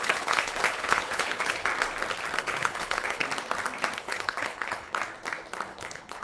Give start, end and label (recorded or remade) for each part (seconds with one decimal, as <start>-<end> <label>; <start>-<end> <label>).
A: 0.0-1.7 remade; 1.7-2.4 recorded; 2.4-3.2 remade; 3.2-4.0 recorded; 4.0-5.0 remade; 5.0-5.7 recorded; 5.7-6.2 remade